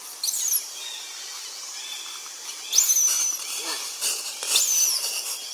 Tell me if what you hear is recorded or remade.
recorded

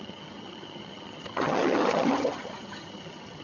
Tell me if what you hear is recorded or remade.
remade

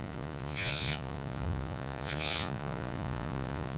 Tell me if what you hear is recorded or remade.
remade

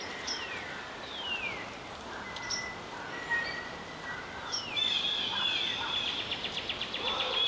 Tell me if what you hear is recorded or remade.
recorded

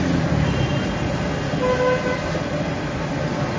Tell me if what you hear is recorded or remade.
recorded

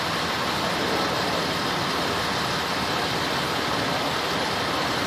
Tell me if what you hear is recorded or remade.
recorded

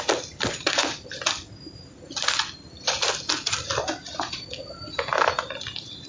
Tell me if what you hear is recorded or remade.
recorded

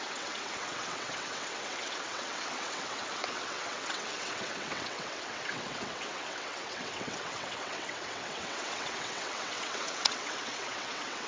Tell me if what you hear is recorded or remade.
remade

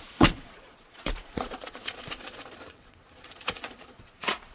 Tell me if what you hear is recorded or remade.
remade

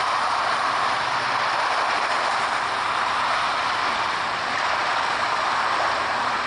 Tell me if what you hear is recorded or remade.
remade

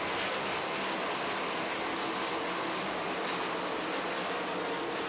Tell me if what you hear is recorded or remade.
recorded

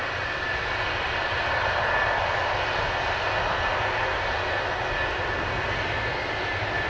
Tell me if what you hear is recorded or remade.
recorded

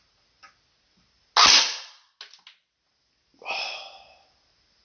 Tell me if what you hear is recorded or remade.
recorded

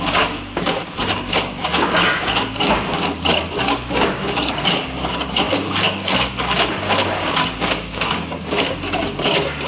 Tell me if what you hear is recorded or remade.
remade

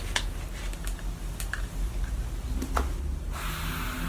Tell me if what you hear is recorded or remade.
recorded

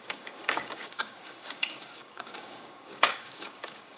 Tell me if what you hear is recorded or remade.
remade